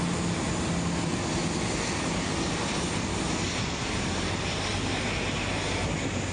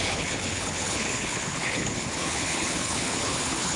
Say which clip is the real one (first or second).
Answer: first